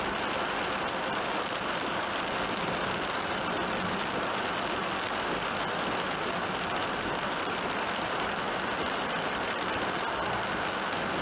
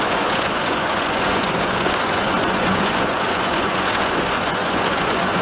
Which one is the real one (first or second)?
first